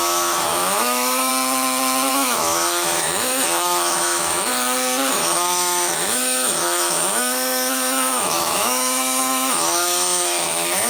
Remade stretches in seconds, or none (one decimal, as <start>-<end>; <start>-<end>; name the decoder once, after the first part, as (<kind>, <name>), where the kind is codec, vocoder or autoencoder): 0.0-1.3 (autoencoder, DAC-VAE); 2.1-4.5; 5.1-10.9